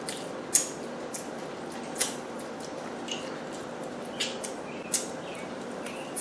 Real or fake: real